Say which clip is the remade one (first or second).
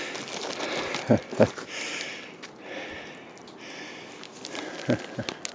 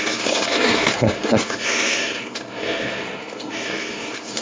second